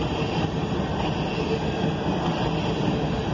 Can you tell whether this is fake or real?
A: real